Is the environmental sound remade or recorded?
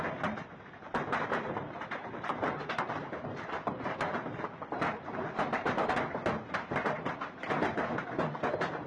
remade